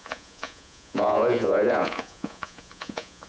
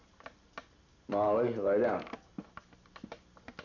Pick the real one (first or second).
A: second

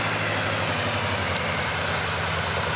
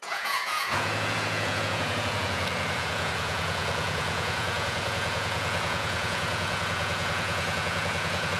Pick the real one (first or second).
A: first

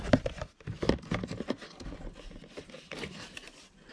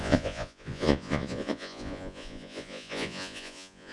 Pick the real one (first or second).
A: first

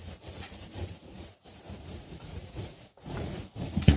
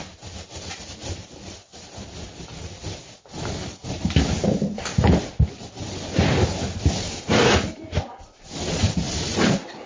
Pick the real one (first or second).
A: second